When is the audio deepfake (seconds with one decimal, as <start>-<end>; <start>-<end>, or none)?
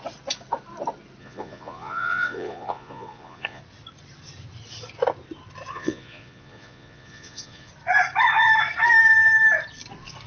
1.2-3.6; 5.7-7.7